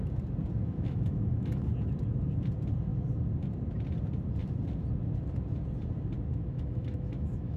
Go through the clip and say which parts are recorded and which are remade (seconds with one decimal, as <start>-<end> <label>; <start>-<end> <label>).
0.0-0.6 recorded; 0.6-1.7 remade; 1.7-6.3 recorded; 6.3-7.6 remade